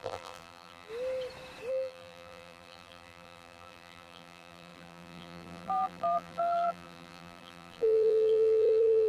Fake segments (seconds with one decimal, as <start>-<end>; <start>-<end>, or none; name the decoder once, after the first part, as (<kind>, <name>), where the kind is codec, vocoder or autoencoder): 0.0-0.9 (vocoder, BigVGAN v2); 1.7-9.1